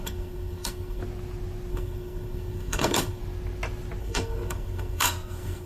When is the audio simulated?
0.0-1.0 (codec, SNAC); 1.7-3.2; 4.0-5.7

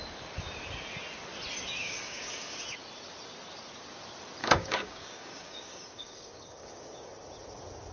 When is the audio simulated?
1.8-2.6 (codec, DAC); 4.4-7.1

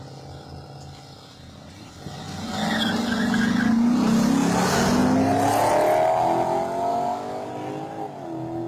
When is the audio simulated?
6.9-7.5 (codec, DAC)